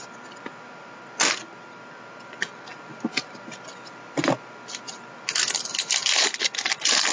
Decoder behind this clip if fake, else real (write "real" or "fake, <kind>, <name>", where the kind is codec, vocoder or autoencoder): real